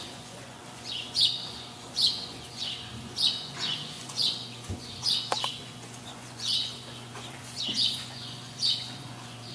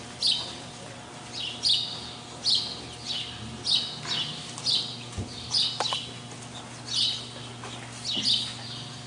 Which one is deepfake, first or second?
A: first